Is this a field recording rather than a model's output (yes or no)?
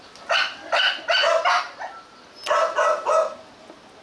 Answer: yes